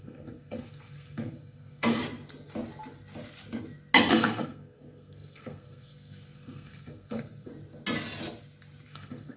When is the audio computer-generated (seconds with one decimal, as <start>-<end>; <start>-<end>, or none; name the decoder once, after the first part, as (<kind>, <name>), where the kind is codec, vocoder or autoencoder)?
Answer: 0.0-2.0 (codec, SNAC); 4.1-7.5; 8.9-9.4